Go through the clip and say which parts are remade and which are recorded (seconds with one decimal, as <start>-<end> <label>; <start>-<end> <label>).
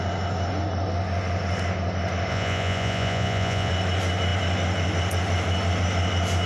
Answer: 0.0-2.3 recorded; 2.3-3.7 remade; 3.7-6.5 recorded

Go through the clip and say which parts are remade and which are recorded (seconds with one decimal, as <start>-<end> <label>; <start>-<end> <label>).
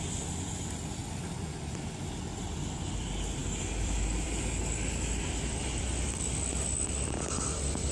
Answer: 0.0-1.0 remade; 1.0-2.8 recorded; 2.8-7.9 remade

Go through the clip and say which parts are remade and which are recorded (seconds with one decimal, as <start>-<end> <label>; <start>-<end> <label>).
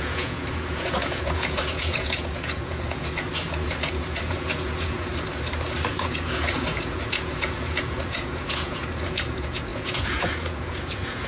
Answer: 0.0-5.1 remade; 5.1-5.9 recorded; 5.9-11.3 remade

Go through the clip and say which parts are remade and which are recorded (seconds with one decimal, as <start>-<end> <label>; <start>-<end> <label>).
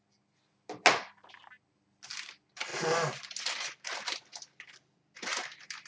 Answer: 0.0-2.7 recorded; 2.7-5.9 remade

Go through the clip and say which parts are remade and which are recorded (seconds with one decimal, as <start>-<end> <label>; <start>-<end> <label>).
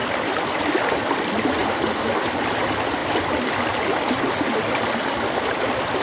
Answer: 0.0-6.0 recorded